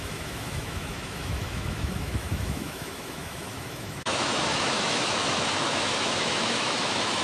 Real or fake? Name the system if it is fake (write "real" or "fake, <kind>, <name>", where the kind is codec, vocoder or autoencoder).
fake, autoencoder, DAC-VAE